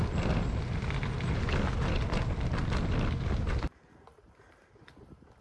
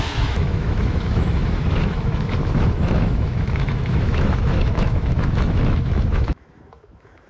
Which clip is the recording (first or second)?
first